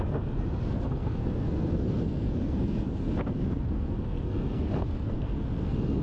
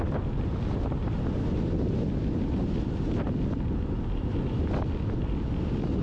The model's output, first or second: first